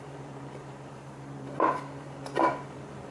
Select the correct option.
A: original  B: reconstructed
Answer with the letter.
B